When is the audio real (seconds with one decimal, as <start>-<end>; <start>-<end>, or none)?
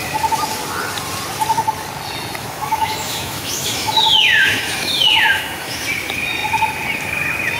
0.0-2.4; 5.8-7.6